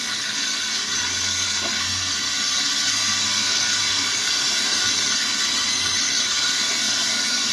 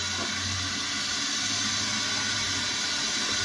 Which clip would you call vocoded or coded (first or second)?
first